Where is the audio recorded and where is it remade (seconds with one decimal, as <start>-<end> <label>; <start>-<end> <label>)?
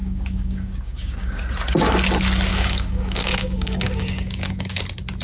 0.0-1.4 remade; 1.4-2.5 recorded; 2.5-4.8 remade; 4.8-5.2 recorded